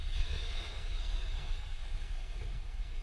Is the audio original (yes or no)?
no